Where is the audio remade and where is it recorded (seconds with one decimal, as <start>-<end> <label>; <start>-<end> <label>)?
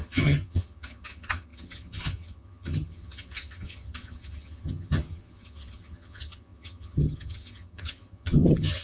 0.0-8.8 remade